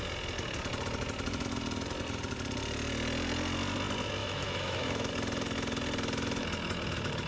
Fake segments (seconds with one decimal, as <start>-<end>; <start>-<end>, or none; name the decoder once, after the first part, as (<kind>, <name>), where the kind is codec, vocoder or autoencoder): 4.2-5.1 (autoencoder, DAC-VAE)